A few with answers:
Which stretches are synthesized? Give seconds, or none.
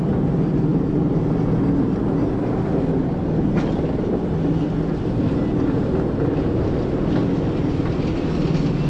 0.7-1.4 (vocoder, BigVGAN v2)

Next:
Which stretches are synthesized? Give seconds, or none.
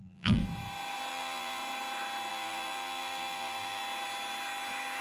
0.0-0.4 (vocoder, BigVGAN v2); 1.1-1.6; 2.3-3.8